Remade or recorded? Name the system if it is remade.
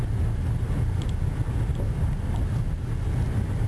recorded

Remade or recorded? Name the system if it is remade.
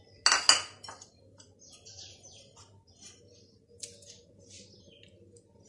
recorded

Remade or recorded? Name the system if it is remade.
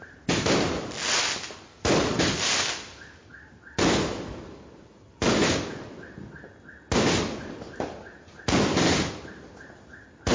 recorded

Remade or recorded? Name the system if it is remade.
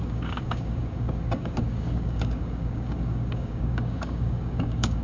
remade, codec, DAC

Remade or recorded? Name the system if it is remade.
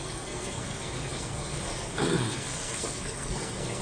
remade, codec, SNAC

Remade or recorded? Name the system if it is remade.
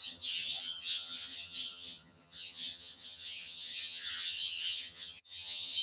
remade, vocoder, HiFi-GAN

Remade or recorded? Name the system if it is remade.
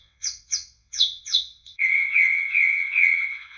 remade, vocoder, WaveNeXt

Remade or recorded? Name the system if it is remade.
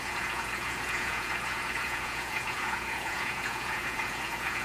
remade, vocoder, Vocos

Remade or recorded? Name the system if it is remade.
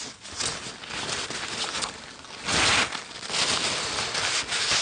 recorded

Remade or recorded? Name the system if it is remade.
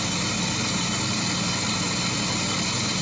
recorded